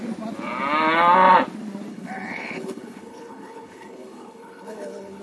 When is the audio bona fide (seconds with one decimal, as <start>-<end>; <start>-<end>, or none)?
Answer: 0.0-1.9